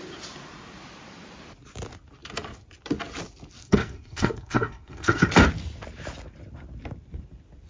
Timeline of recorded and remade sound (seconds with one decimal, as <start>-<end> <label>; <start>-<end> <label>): 0.0-3.6 recorded; 3.6-5.3 remade; 5.3-7.7 recorded

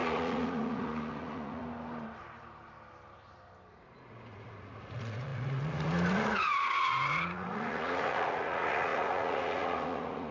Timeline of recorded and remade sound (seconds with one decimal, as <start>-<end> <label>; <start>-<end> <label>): 0.0-1.6 remade; 1.6-3.7 recorded; 3.7-10.3 remade

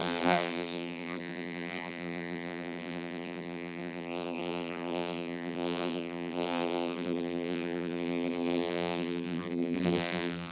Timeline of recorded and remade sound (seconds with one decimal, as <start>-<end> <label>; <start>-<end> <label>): 0.0-10.5 remade

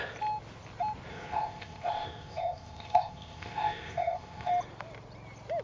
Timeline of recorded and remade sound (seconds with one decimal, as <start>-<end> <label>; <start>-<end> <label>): 0.0-1.1 recorded; 1.1-4.5 remade; 4.5-5.6 recorded

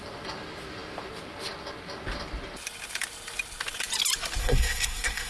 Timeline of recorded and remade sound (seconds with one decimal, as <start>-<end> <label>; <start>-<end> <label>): 0.0-4.4 recorded; 4.4-5.3 remade

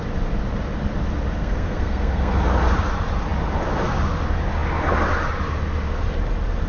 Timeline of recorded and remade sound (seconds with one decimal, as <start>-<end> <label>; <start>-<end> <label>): 0.0-1.4 recorded; 1.4-2.3 remade; 2.3-6.7 recorded

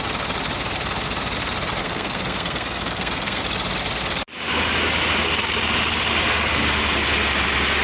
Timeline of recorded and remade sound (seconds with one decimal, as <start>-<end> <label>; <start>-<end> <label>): 0.0-1.8 recorded; 1.8-3.4 remade; 3.4-7.8 recorded

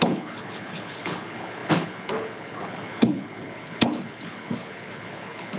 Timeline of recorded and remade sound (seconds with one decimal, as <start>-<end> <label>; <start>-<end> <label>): 0.0-5.6 remade